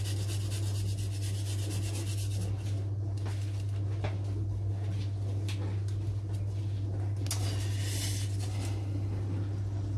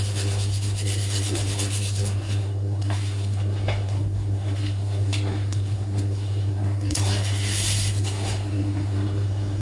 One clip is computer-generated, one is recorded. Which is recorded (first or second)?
first